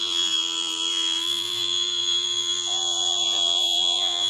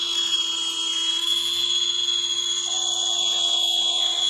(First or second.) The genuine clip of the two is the second